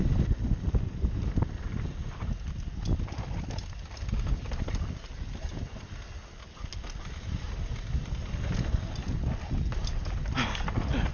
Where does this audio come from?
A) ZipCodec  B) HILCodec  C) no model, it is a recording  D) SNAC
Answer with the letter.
C